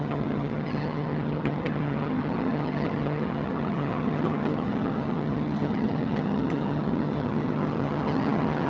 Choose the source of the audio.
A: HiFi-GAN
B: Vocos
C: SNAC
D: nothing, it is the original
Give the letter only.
A